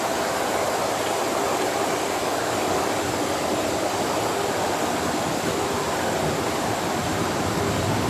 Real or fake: real